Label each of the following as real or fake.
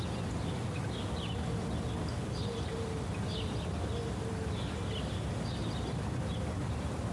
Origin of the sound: real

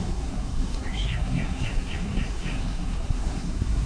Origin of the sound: fake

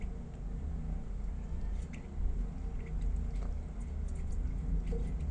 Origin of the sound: real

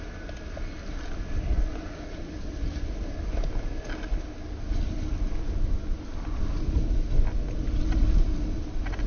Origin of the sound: real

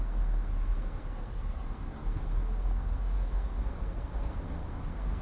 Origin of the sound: fake